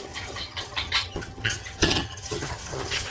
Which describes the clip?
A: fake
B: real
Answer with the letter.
A